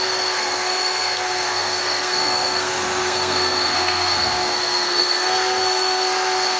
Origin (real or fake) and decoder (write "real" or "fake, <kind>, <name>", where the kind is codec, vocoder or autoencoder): fake, codec, SNAC